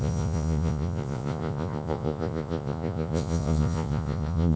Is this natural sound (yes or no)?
no